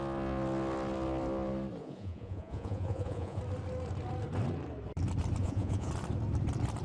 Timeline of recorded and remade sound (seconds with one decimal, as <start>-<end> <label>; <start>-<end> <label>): 0.0-1.8 recorded; 1.8-3.4 remade; 3.4-5.4 recorded; 5.4-5.9 remade; 5.9-6.8 recorded